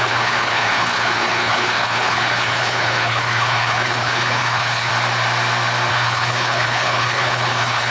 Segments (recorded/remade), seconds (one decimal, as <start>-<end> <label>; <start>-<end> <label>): 0.0-4.9 remade; 4.9-5.9 recorded; 5.9-7.9 remade